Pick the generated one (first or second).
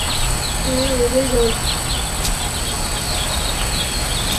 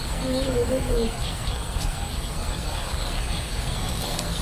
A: second